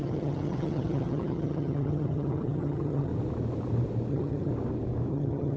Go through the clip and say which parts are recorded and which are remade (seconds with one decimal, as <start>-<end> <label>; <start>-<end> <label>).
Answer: 0.0-3.1 remade; 3.1-4.1 recorded; 4.1-4.5 remade; 4.5-5.1 recorded; 5.1-5.6 remade